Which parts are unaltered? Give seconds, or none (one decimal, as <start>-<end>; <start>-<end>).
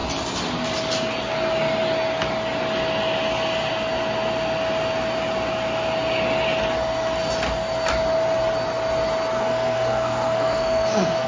0.0-9.4